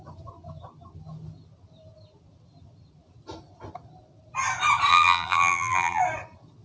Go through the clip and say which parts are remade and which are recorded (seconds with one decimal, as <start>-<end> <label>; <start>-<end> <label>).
0.0-4.9 recorded; 4.9-6.0 remade; 6.0-6.6 recorded